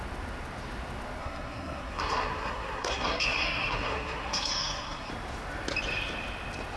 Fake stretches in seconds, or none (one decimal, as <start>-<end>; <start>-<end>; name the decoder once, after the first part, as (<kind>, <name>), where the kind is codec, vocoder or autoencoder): 1.2-5.1 (codec, SNAC)